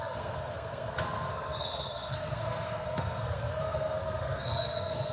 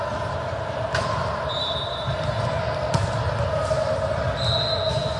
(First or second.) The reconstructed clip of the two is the first